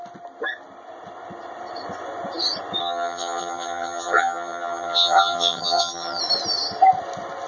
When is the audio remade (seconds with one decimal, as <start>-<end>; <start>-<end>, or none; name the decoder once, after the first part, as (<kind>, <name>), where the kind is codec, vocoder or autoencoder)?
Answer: 2.8-6.2 (vocoder, HiFi-GAN)